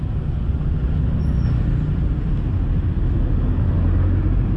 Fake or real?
real